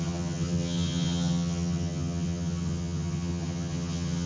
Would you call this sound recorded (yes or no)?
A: no